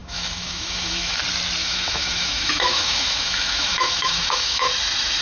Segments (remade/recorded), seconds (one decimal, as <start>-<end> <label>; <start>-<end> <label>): 0.0-1.2 remade; 1.2-1.6 recorded; 1.6-4.7 remade; 4.7-5.2 recorded